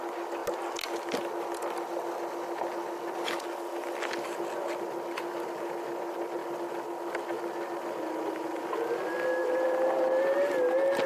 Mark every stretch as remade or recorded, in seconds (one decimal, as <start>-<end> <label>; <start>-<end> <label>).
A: 0.0-11.1 recorded